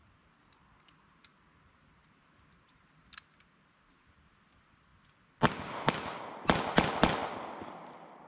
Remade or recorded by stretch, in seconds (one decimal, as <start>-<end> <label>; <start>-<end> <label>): 0.0-8.3 recorded